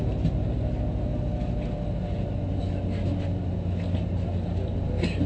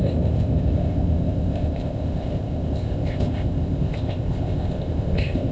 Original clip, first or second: first